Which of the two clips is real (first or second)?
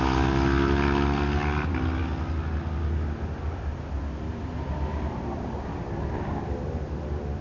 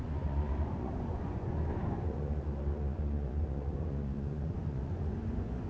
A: first